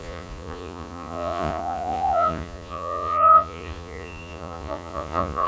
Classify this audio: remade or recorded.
remade